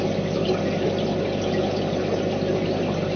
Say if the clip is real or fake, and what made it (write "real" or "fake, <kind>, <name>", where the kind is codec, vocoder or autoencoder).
real